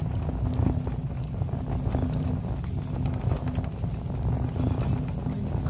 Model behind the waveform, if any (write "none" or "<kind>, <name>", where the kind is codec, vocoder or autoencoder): none